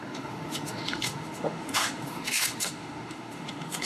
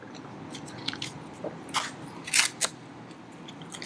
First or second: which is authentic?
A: second